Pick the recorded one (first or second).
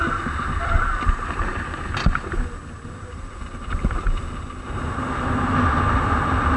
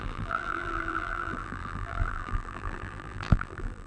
first